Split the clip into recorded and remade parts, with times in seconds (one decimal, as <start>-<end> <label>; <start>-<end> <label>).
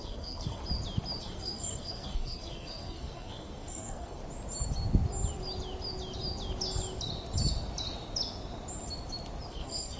0.0-0.6 remade; 0.6-1.2 recorded; 1.2-4.2 remade; 4.2-9.5 recorded; 9.5-10.0 remade